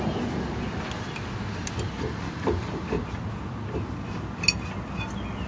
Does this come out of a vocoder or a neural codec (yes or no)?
no